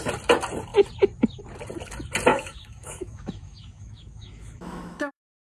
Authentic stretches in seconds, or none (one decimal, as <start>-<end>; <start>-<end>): 0.0-2.3